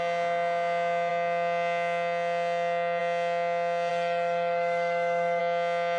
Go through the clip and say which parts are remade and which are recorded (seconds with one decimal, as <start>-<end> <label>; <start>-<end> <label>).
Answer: 0.0-3.9 recorded; 3.9-5.4 remade; 5.4-6.0 recorded